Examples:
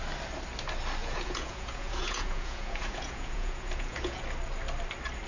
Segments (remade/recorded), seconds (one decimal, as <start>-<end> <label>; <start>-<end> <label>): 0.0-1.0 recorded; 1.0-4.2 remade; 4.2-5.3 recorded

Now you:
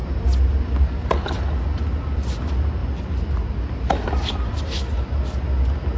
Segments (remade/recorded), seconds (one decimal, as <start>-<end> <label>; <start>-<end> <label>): 0.0-6.0 recorded

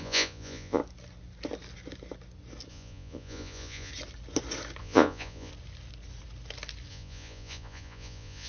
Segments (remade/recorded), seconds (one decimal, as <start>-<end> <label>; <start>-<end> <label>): 0.0-0.8 remade; 0.8-2.7 recorded; 2.7-3.9 remade; 3.9-4.8 recorded; 4.8-5.5 remade; 5.5-6.9 recorded; 6.9-8.5 remade

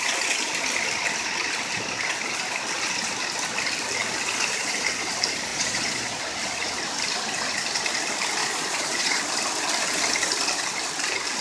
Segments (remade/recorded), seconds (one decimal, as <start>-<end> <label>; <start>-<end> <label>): 0.0-5.5 recorded; 5.5-6.2 remade; 6.2-8.4 recorded; 8.4-9.2 remade; 9.2-11.4 recorded